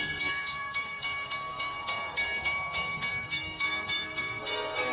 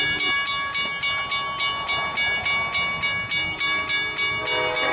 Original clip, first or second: second